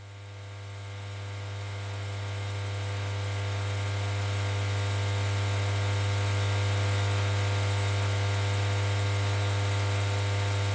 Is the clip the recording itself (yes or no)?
yes